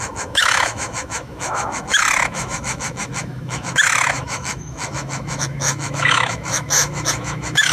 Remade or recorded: remade